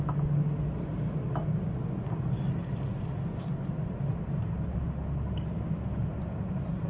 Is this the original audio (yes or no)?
yes